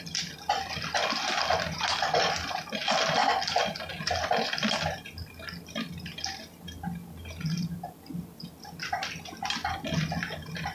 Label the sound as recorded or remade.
recorded